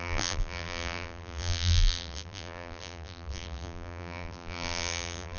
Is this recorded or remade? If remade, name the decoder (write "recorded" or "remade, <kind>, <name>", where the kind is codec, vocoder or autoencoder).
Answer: remade, vocoder, BigVGAN v2